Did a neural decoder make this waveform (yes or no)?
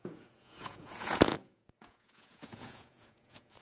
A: yes